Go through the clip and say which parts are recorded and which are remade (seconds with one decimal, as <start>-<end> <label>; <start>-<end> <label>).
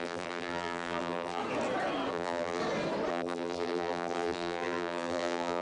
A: 0.0-1.4 remade; 1.4-2.1 recorded; 2.1-2.6 remade; 2.6-3.1 recorded; 3.1-5.6 remade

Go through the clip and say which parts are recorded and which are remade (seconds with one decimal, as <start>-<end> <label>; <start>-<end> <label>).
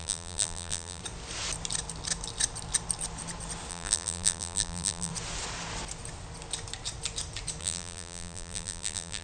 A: 0.0-1.0 remade; 1.0-3.7 recorded; 3.7-5.1 remade; 5.1-7.6 recorded; 7.6-9.2 remade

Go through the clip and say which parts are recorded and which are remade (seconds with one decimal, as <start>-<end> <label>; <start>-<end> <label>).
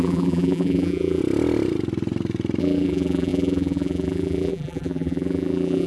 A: 0.0-1.2 remade; 1.2-2.6 recorded; 2.6-5.9 remade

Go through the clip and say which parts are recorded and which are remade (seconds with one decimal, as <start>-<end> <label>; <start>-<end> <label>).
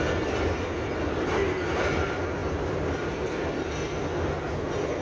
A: 0.0-5.0 recorded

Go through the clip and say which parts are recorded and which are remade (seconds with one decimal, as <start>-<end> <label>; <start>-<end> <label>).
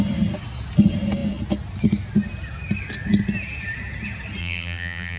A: 0.0-4.4 recorded; 4.4-5.2 remade